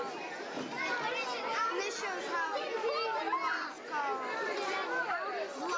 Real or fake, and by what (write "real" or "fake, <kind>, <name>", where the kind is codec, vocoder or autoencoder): real